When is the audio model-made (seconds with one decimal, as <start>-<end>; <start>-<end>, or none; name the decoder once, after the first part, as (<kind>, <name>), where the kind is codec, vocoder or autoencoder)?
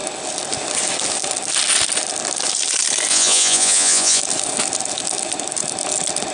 3.1-4.2 (vocoder, Vocos)